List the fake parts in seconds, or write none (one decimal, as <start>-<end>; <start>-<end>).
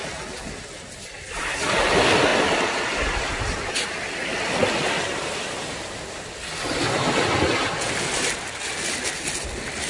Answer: none